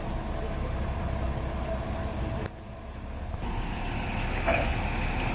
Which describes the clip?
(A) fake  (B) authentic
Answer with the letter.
B